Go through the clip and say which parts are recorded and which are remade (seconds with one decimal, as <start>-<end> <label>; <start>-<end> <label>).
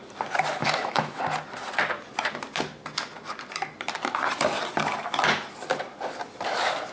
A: 0.0-0.6 recorded; 0.6-1.2 remade; 1.2-6.9 recorded